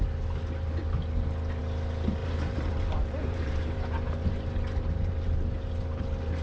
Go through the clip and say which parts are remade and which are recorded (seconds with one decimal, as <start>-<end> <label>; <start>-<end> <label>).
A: 0.0-2.2 recorded; 2.2-6.0 remade; 6.0-6.4 recorded